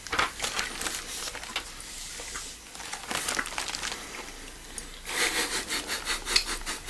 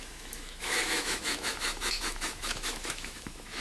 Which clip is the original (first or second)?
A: first